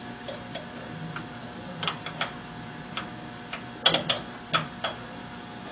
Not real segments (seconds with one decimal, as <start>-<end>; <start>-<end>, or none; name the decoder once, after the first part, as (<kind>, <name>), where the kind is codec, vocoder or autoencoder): none